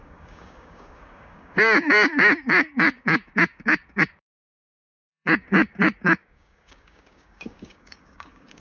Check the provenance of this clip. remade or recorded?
remade